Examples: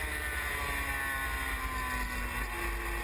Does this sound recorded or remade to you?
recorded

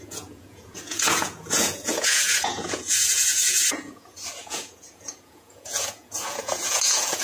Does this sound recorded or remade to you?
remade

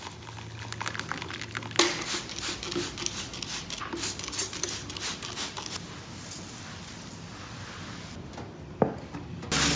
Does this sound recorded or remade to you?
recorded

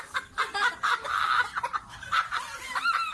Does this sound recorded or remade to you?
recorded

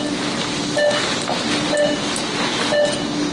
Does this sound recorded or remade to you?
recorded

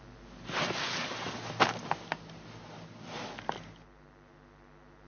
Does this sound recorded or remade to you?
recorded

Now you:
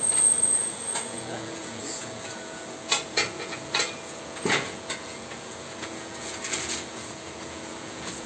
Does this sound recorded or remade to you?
remade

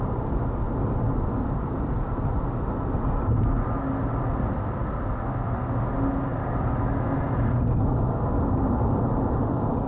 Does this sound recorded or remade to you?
recorded